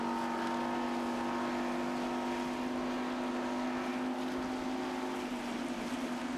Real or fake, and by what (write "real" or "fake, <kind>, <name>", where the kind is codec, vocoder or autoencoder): real